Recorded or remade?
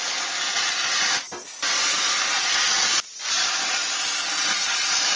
recorded